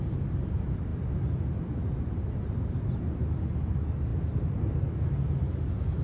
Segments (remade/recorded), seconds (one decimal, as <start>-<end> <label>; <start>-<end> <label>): 0.0-6.0 recorded